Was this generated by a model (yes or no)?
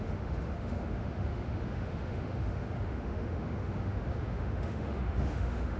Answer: yes